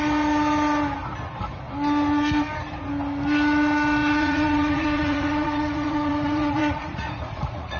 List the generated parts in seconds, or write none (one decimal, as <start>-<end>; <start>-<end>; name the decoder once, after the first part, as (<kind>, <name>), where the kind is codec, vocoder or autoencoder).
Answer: 4.0-7.8 (vocoder, Vocos)